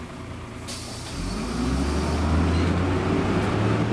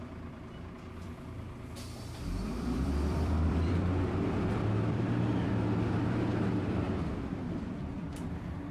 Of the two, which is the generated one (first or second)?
second